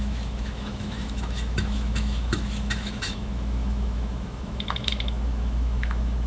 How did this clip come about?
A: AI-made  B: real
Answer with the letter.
A